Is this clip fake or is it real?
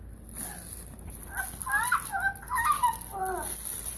real